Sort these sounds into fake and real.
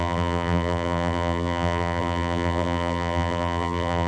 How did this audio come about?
fake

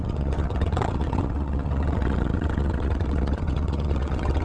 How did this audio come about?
fake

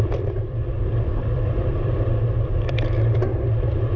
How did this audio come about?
fake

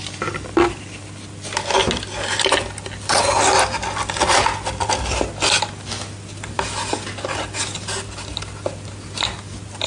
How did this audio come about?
real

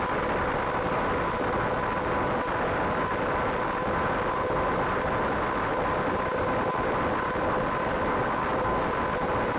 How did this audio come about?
real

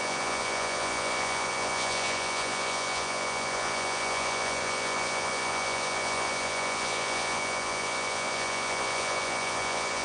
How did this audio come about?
fake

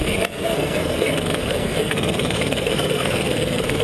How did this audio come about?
fake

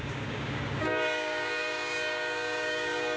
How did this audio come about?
fake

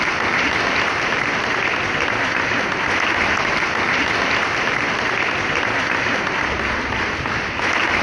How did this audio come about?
real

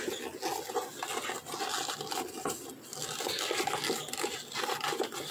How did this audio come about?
real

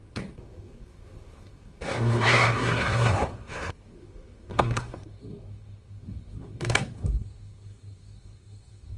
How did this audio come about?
fake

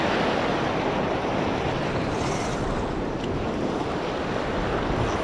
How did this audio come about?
real